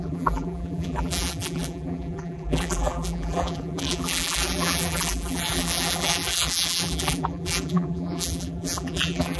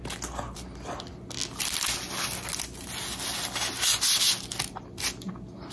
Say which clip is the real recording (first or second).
second